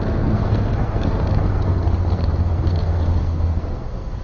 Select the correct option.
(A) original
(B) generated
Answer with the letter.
B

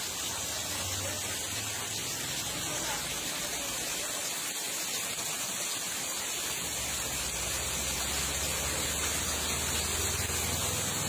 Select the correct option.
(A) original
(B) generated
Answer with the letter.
A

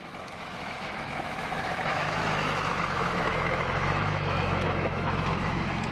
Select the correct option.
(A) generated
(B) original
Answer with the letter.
A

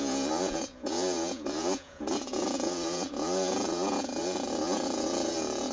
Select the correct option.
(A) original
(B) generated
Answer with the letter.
B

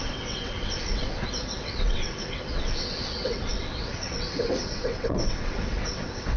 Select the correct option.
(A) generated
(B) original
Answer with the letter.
A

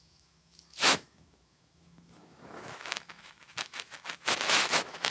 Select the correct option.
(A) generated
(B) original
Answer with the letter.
A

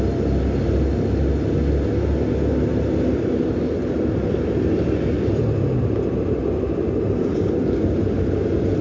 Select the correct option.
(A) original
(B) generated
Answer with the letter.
A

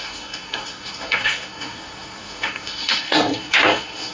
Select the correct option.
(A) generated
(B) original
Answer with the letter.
A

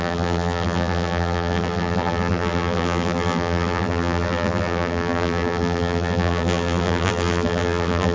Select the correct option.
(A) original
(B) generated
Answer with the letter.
B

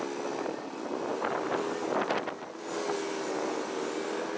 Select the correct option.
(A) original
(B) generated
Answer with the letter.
A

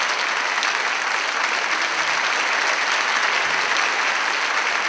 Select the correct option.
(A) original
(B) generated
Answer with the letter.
A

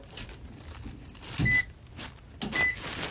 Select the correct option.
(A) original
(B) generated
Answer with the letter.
A